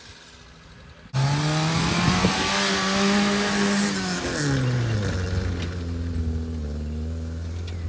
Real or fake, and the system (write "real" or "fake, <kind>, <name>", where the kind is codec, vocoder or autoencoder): real